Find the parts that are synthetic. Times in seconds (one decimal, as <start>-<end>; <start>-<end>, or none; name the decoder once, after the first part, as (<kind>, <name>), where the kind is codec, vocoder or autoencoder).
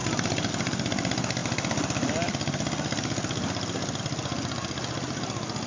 none